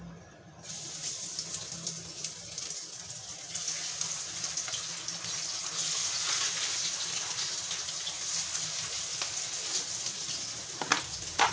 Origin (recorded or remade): recorded